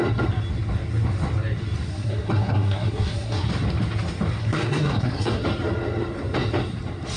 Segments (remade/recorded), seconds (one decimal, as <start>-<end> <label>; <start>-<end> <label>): 0.0-1.9 recorded; 1.9-3.5 remade; 3.5-4.4 recorded; 4.4-5.4 remade; 5.4-7.2 recorded

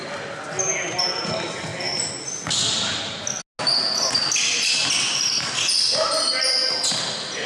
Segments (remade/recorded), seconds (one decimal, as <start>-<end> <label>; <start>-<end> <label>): 0.0-7.5 recorded

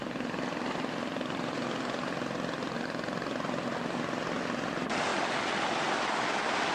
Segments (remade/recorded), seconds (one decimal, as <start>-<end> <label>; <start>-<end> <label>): 0.0-5.1 remade; 5.1-6.7 recorded